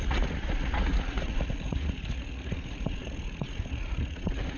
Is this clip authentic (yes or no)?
no